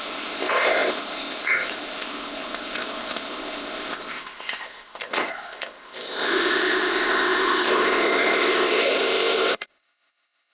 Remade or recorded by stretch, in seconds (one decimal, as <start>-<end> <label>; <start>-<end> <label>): 0.0-10.5 remade